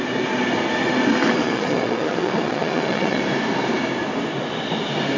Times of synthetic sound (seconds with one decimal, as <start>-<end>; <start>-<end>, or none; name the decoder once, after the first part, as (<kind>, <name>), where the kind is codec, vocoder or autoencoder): 1.4-3.2 (vocoder, Vocos)